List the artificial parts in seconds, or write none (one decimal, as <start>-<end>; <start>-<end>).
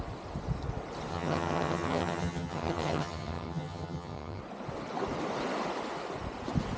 1.1-4.4